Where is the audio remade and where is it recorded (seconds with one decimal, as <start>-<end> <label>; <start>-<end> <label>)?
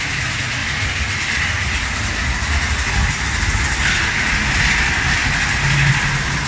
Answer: 0.0-6.5 recorded